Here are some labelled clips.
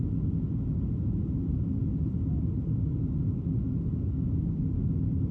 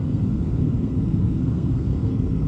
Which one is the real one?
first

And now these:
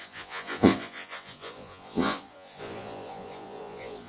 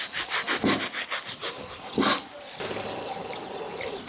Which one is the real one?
second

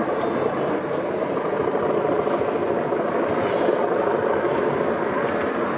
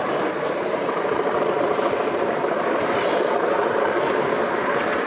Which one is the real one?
first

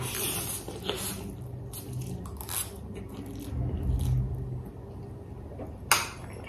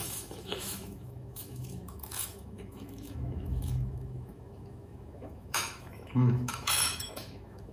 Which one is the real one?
first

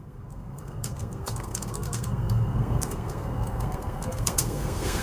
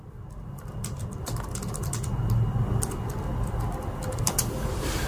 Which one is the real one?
second